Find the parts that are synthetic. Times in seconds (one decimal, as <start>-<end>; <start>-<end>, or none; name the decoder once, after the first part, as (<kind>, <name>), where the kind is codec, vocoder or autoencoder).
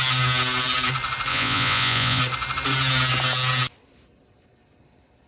1.3-2.2 (vocoder, Vocos)